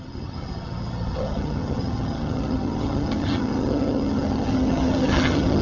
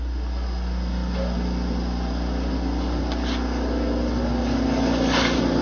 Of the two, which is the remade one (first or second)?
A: first